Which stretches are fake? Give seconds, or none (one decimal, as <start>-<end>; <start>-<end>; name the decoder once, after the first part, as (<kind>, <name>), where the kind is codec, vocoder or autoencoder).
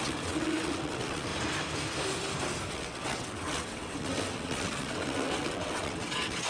0.0-1.3 (vocoder, WaveNeXt); 2.7-6.5